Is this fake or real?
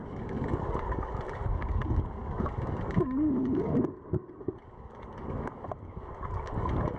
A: fake